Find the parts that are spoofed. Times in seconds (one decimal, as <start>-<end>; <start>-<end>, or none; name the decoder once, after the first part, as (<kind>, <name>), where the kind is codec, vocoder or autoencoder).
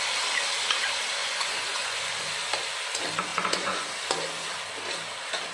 1.2-2.3 (vocoder, Vocos); 3.3-4.0